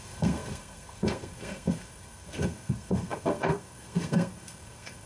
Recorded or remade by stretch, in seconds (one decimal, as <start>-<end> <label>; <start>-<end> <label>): 0.0-5.1 remade